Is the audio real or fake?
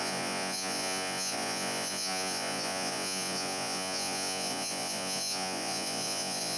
fake